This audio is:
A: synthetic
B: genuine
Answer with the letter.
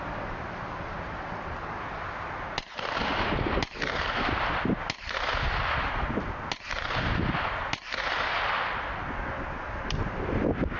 B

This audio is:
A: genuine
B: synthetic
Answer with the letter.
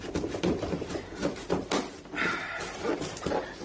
A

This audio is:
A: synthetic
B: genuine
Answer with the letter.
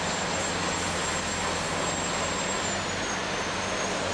B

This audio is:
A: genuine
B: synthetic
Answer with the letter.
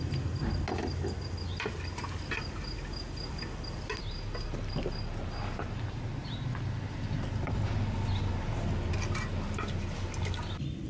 A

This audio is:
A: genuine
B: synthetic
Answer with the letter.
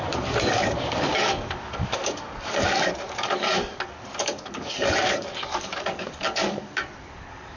B